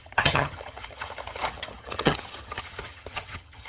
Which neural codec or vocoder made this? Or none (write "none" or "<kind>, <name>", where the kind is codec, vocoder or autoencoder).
vocoder, HiFi-GAN